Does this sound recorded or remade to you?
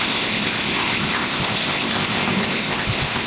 remade